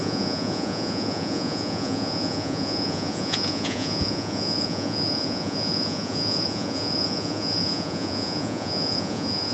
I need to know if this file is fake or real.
fake